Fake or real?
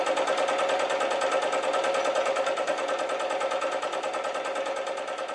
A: real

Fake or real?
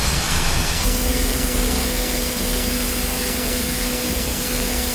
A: fake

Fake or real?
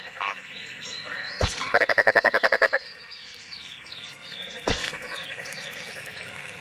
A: fake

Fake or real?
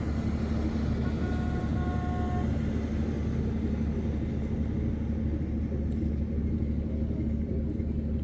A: real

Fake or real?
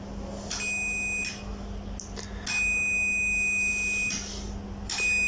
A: real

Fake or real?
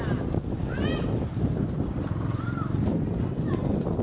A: real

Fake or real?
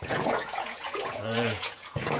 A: fake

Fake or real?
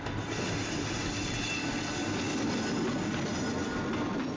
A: real